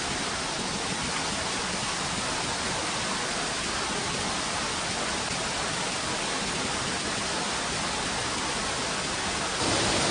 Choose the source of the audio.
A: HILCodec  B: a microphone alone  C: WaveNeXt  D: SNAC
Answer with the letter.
B